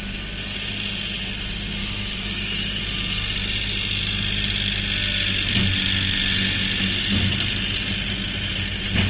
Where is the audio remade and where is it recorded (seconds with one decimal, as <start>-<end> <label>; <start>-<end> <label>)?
0.0-1.8 recorded; 1.8-2.8 remade; 2.8-9.1 recorded